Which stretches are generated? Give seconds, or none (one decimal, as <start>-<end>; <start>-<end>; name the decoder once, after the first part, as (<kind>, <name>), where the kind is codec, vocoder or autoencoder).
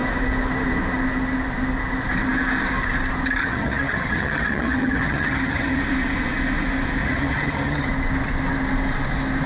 3.4-5.8 (vocoder, HiFi-GAN); 7.0-7.9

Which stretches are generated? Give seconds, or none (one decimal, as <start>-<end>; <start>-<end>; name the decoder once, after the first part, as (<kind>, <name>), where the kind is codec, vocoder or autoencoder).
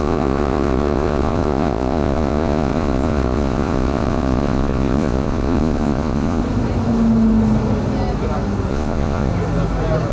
0.0-6.4 (vocoder, Vocos); 8.7-9.3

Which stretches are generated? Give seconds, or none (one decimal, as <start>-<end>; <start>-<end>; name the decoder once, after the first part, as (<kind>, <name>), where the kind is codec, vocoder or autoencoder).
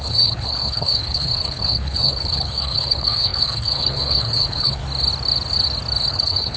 0.0-4.8 (codec, HILCodec); 6.1-6.6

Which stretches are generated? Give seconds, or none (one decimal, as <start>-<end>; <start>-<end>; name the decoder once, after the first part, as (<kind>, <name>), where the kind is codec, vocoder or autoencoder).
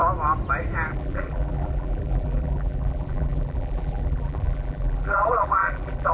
0.9-6.1 (vocoder, BigVGAN v2)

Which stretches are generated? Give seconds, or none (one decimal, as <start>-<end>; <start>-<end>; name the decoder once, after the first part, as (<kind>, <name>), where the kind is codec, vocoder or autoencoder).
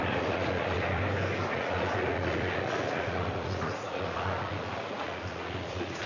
0.0-1.0 (vocoder, Vocos); 1.5-6.1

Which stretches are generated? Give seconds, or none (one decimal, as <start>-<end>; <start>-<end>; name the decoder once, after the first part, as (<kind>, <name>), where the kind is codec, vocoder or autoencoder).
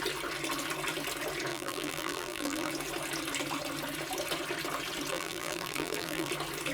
1.5-2.7 (vocoder, BigVGAN v2); 5.1-6.3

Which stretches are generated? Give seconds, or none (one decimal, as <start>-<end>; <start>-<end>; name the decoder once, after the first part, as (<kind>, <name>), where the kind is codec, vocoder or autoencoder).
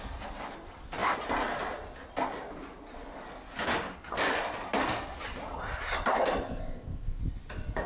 6.4-7.2 (codec, ZipCodec)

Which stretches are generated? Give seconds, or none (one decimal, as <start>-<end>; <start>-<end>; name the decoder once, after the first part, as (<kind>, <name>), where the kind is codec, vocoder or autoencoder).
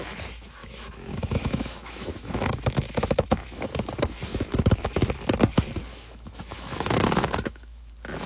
0.6-3.7 (autoencoder, DAC-VAE); 4.3-5.1; 5.9-7.9